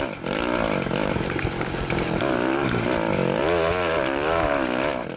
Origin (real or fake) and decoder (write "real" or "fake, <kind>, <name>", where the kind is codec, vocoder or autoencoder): real